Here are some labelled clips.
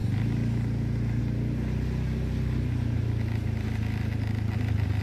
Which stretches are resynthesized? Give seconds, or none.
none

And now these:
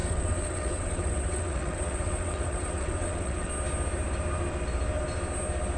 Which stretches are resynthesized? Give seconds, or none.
0.0-3.5 (vocoder, WaveNeXt)

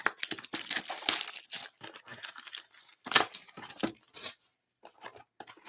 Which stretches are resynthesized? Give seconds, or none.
2.1-5.7 (vocoder, BigVGAN v2)

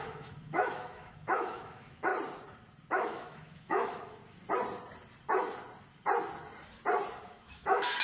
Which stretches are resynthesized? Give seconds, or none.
0.0-2.1 (autoencoder, DAC-VAE); 2.9-4.2; 7.2-8.0

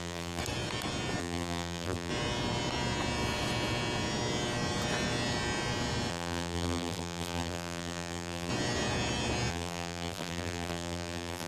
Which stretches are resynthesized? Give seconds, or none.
0.0-0.4 (vocoder, BigVGAN v2); 1.2-2.1; 6.1-8.5; 9.5-11.5

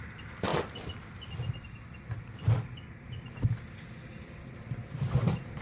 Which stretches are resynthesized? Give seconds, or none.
none